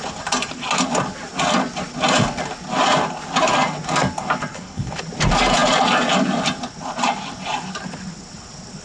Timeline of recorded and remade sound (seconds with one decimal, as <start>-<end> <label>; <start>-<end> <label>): 0.0-4.5 recorded; 4.5-5.0 remade; 5.0-8.8 recorded